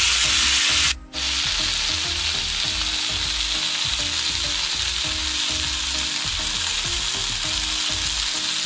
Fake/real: real